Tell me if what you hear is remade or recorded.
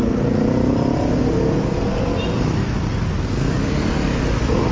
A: recorded